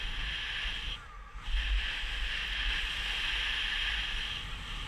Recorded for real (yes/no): yes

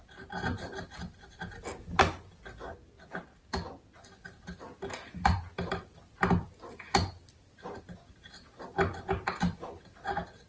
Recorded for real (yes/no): yes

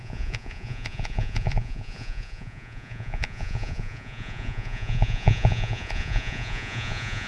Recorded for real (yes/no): no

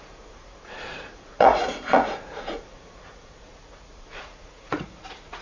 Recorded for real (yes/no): no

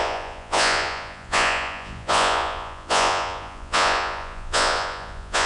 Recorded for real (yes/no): no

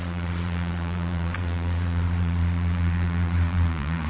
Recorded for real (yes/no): no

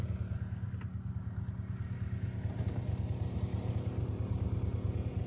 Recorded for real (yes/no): yes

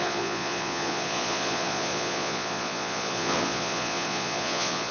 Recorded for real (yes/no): no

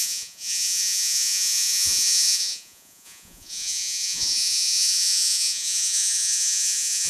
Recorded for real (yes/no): no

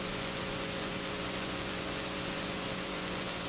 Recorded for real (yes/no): no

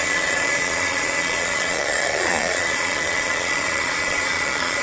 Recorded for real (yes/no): no